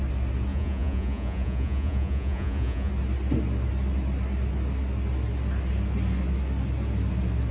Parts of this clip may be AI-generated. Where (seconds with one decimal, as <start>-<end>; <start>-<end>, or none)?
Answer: 0.5-2.9